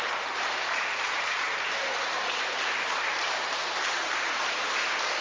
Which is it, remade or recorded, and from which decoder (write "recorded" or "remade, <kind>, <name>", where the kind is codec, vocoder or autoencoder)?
remade, vocoder, BigVGAN v2